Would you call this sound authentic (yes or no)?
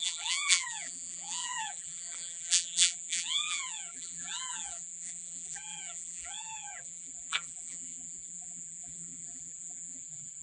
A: no